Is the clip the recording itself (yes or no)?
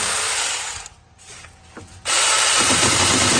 no